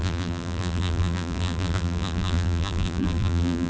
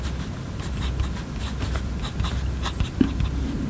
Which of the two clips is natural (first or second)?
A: second